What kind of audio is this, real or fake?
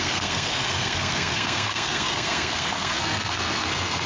fake